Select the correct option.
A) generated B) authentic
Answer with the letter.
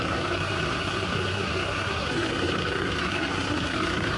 A